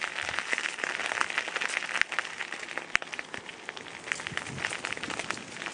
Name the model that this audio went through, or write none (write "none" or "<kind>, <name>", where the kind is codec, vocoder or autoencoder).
none